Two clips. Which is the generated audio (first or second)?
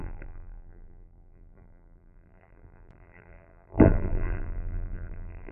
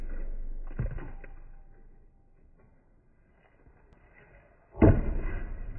first